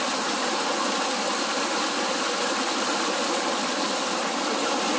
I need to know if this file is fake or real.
real